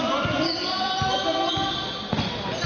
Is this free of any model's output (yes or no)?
yes